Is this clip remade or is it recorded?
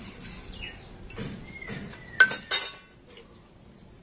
recorded